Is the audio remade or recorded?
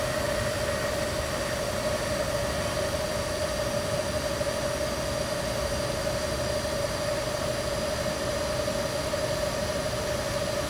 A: recorded